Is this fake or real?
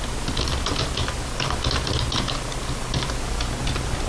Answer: real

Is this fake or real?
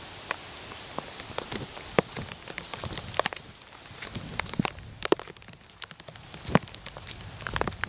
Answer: real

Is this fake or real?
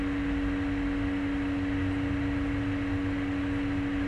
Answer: real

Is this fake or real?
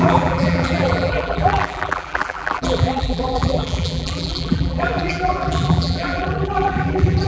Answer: fake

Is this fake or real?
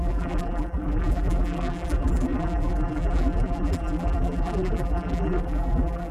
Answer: fake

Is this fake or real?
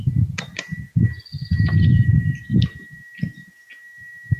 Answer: real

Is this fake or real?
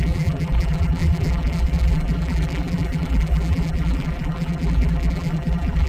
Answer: fake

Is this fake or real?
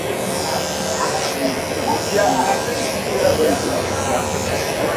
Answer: fake